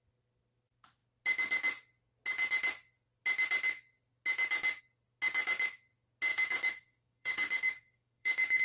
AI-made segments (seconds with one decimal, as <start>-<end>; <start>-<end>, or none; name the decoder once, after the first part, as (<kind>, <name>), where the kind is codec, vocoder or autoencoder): 6.3-8.6 (codec, DAC)